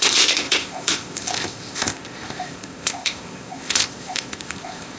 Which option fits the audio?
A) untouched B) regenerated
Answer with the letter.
B